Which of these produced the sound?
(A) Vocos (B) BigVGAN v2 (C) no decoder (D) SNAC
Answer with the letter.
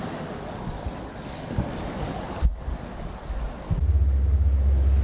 C